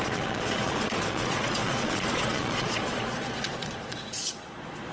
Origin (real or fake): fake